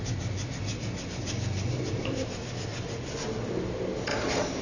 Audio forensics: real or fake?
real